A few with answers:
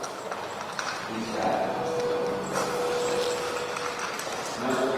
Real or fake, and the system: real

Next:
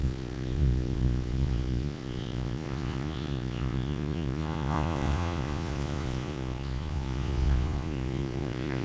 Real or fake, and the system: fake, vocoder, Vocos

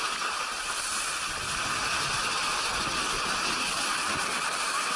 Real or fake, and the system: real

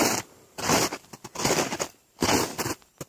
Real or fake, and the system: real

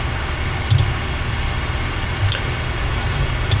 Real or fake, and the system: fake, vocoder, BigVGAN v2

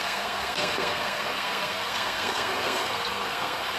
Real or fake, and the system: fake, codec, SNAC